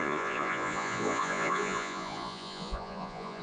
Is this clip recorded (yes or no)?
no